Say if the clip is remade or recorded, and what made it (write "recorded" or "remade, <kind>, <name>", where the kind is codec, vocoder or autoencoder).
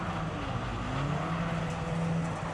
recorded